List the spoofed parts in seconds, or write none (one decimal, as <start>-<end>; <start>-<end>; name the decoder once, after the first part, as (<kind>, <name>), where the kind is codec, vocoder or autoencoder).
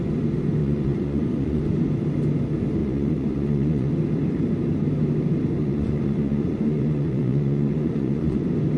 0.6-1.6 (vocoder, Vocos); 2.8-3.9; 5.6-8.4